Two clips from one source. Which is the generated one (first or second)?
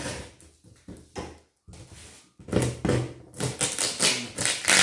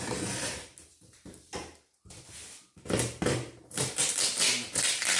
second